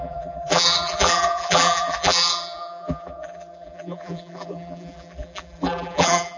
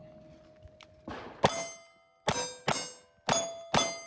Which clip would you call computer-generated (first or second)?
first